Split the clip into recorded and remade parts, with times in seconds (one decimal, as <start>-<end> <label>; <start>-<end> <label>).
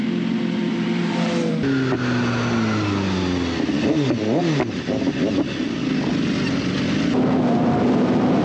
0.0-0.7 recorded; 0.7-1.5 remade; 1.5-8.4 recorded